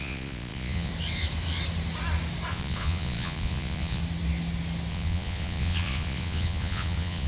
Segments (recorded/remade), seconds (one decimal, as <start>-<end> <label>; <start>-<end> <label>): 0.0-0.9 remade; 0.9-2.5 recorded; 2.5-4.0 remade; 4.0-4.9 recorded; 4.9-7.3 remade